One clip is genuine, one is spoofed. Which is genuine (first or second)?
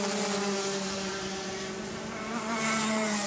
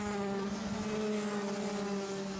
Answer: second